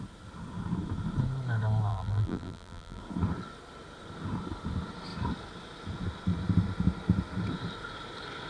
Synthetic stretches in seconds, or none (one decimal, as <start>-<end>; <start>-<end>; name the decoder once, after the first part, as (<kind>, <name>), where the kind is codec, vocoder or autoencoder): 1.9-3.0 (vocoder, BigVGAN v2)